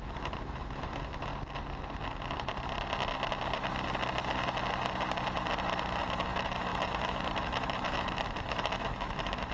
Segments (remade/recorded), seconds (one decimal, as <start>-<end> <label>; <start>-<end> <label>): 0.0-1.3 remade; 1.3-6.0 recorded; 6.0-9.5 remade